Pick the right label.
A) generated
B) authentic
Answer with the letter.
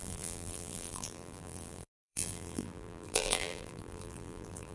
A